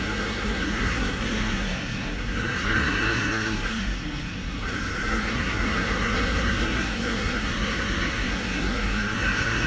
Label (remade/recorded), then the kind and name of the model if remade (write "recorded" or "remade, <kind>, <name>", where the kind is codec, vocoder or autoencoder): remade, codec, SNAC